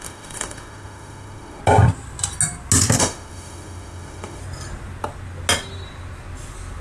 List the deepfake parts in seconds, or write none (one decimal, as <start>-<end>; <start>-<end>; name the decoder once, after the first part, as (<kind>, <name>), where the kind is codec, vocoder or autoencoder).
0.0-1.6 (autoencoder, DAC-VAE); 3.0-4.4